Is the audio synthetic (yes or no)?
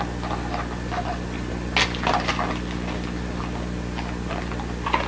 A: no